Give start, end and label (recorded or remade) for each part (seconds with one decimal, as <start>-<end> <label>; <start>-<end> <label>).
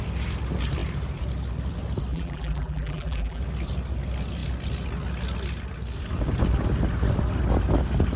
0.0-2.1 recorded; 2.1-3.4 remade; 3.4-8.2 recorded